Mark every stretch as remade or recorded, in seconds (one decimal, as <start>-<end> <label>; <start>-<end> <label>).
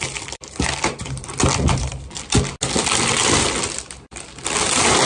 0.0-1.3 remade; 1.3-3.4 recorded; 3.4-5.0 remade